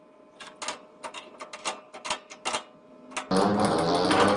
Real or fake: real